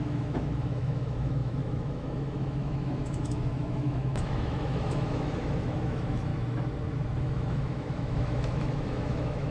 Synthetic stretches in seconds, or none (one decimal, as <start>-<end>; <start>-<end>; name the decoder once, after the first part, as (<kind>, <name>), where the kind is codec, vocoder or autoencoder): 0.0-6.3 (autoencoder, DAC-VAE); 7.2-9.5